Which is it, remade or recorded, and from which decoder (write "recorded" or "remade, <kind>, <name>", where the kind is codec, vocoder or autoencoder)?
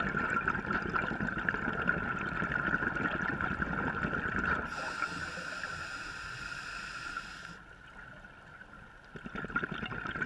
recorded